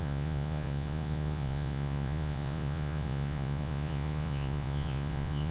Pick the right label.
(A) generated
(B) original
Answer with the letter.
A